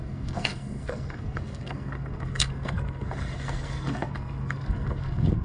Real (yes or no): no